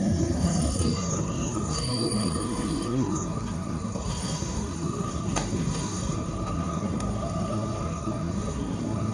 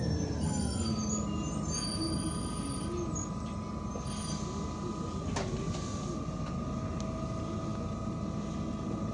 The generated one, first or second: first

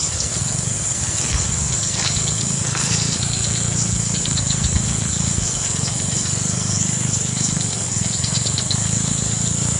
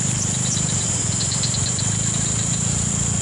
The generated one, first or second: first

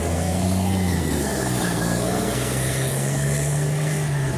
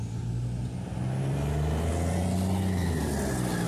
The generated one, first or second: first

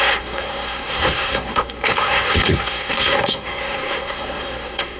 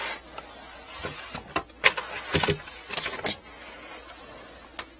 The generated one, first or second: first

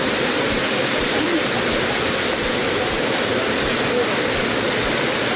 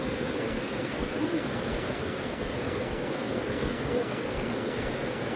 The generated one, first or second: second